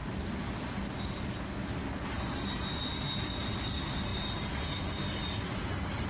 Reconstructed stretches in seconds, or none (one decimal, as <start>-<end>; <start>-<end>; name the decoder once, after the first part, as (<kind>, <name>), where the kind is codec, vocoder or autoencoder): 0.0-0.7 (vocoder, BigVGAN v2)